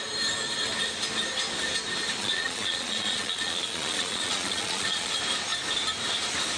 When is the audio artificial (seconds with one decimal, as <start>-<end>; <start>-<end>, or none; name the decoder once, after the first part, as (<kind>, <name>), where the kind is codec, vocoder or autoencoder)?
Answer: 2.2-5.1 (vocoder, Vocos)